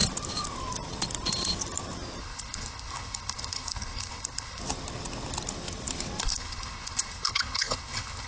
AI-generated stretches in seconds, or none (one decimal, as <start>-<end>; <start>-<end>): 2.2-4.6; 6.2-8.3